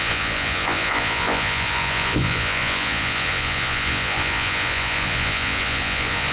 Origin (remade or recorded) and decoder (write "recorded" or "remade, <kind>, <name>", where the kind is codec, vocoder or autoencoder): remade, vocoder, Vocos